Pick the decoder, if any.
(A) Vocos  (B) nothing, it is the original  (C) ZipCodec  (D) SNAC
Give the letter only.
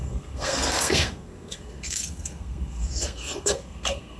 D